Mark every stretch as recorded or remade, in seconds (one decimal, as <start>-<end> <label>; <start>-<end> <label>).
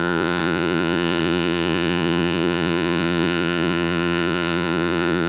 0.0-5.3 remade